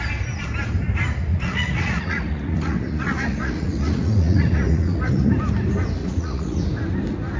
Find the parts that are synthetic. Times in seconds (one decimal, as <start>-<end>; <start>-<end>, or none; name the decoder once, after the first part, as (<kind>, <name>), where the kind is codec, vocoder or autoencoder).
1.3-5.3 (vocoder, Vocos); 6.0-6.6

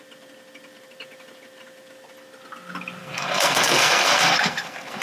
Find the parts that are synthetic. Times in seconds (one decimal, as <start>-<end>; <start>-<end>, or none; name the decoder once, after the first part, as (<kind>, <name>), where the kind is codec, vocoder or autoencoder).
3.0-5.0 (codec, SNAC)

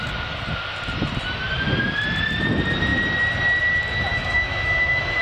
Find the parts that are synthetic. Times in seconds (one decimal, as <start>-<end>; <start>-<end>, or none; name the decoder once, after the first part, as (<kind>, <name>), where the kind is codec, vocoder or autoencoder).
4.1-5.2 (autoencoder, DAC-VAE)

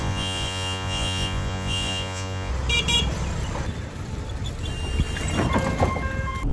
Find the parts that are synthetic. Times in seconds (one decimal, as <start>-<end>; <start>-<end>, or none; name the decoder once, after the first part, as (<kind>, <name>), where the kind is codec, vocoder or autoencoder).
0.0-2.5 (vocoder, Vocos)